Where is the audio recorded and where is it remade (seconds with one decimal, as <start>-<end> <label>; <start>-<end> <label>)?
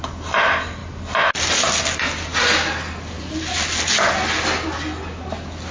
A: 0.0-5.7 recorded